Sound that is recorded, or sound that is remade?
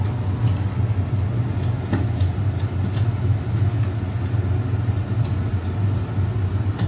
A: recorded